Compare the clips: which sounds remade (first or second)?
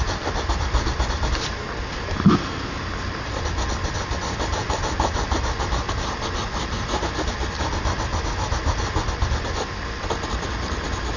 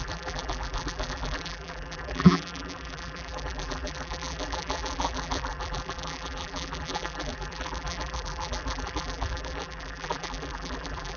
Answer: second